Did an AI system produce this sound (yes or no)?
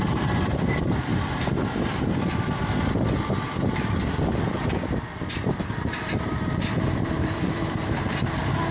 yes